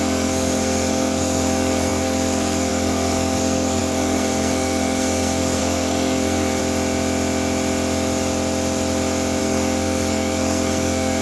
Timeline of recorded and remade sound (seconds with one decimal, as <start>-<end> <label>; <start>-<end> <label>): 0.0-6.6 remade; 6.6-9.4 recorded; 9.4-11.2 remade